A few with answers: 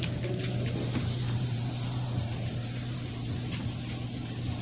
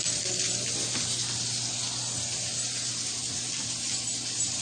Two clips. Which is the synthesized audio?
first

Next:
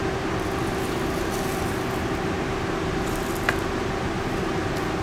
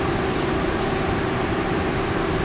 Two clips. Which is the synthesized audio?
second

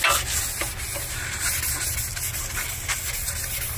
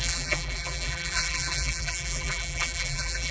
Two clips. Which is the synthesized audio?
second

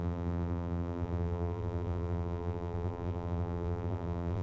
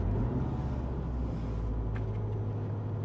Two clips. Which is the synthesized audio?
first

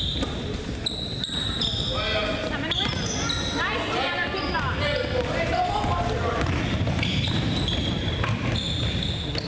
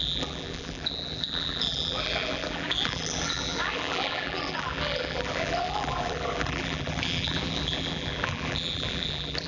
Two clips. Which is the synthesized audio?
second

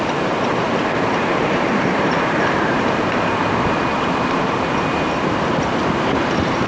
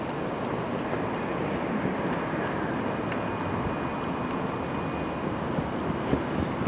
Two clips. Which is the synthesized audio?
first